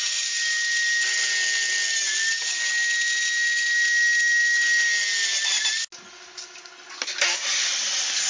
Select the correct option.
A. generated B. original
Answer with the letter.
B